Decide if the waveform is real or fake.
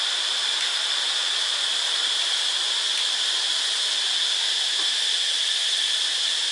real